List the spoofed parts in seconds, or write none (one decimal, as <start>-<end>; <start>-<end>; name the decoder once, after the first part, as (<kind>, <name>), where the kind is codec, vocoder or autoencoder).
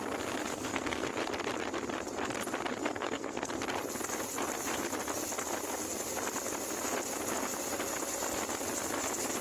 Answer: 0.5-1.1 (codec, SNAC); 2.8-3.5